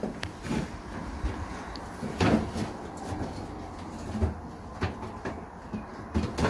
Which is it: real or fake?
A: real